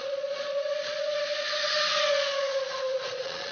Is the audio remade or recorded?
remade